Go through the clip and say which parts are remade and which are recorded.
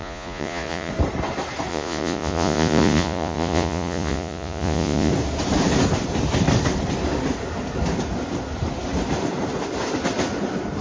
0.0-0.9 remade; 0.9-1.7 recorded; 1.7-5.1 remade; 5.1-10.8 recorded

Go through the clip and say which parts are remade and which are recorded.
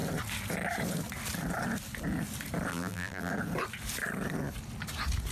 0.0-2.7 recorded; 2.7-3.3 remade; 3.3-5.3 recorded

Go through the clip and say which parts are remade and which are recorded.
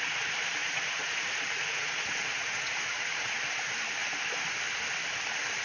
0.0-0.6 recorded; 0.6-3.3 remade; 3.3-5.6 recorded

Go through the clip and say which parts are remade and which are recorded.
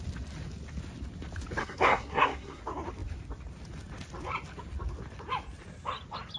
0.0-1.6 recorded; 1.6-2.6 remade; 2.6-6.4 recorded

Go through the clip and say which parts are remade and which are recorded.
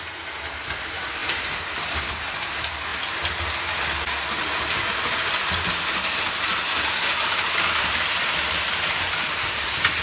0.0-2.9 remade; 2.9-7.4 recorded; 7.4-10.0 remade